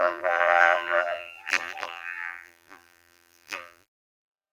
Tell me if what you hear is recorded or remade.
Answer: remade